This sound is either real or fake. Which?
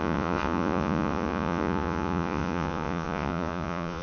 fake